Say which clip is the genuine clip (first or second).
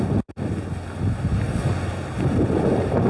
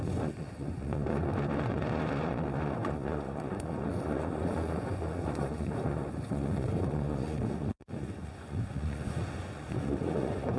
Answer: first